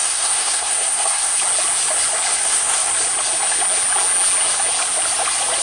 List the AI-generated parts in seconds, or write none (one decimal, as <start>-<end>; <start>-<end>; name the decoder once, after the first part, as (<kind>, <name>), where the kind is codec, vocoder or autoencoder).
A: 0.0-1.4 (codec, SNAC); 2.3-2.9